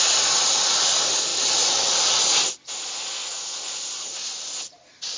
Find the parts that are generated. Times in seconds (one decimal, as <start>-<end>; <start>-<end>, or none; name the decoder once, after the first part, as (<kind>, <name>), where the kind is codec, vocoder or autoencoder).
1.3-2.5 (vocoder, BigVGAN v2); 3.2-5.2